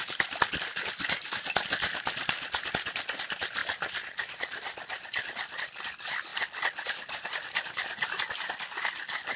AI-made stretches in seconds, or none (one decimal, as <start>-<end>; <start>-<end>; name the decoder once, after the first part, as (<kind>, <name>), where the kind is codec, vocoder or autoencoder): 6.3-8.3 (vocoder, BigVGAN v2)